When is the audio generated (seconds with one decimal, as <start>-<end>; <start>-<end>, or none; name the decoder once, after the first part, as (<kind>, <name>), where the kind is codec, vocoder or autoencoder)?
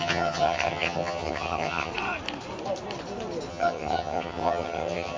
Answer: 0.0-1.9 (vocoder, HiFi-GAN); 3.5-5.2